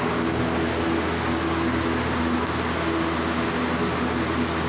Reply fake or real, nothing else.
real